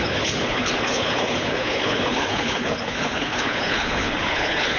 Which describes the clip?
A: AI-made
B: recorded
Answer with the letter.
A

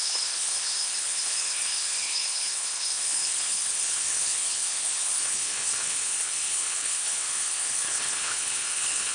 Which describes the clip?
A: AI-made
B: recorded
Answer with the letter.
A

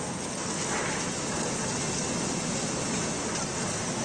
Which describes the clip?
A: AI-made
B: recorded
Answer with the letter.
B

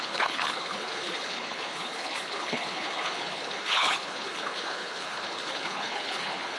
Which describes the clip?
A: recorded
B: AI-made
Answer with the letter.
B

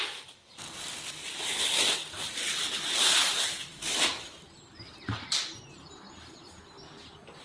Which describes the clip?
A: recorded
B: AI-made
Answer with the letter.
A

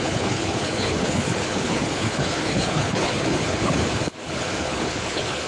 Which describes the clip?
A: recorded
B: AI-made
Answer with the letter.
B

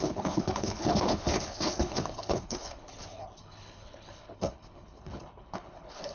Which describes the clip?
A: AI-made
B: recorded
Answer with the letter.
A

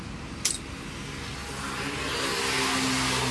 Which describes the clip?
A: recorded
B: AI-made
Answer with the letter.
A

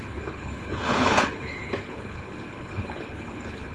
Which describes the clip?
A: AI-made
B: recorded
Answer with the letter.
A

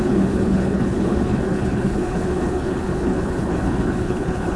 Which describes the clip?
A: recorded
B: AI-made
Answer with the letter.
B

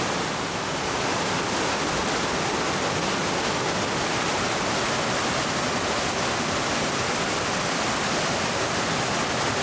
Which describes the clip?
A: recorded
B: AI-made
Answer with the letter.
A